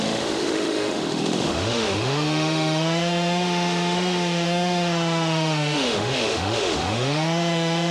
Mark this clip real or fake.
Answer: fake